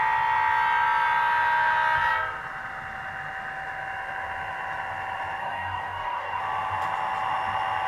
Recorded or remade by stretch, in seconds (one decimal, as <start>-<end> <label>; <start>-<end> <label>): 0.0-5.4 recorded; 5.4-6.4 remade; 6.4-7.9 recorded